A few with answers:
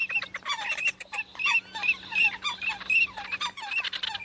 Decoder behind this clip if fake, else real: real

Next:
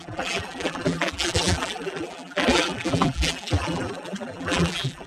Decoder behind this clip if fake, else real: fake, vocoder, BigVGAN v2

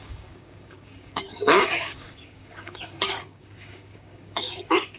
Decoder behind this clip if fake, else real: fake, codec, DAC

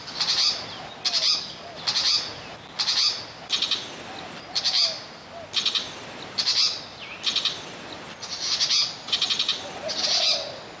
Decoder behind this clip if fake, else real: real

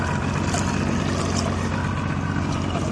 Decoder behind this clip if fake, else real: real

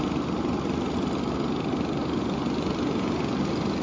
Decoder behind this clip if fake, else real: real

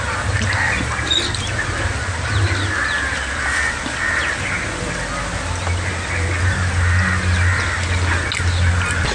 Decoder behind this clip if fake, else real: real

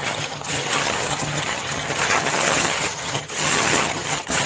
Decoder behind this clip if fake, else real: fake, vocoder, HiFi-GAN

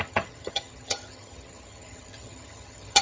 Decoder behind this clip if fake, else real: fake, vocoder, HiFi-GAN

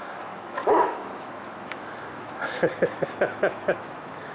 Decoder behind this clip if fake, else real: fake, autoencoder, DAC-VAE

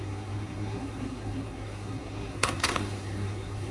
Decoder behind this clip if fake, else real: fake, codec, SNAC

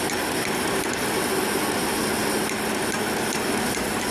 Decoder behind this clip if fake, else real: real